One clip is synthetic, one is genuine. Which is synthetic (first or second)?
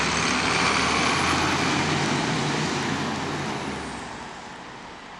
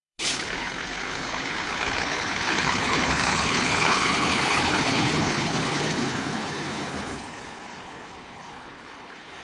second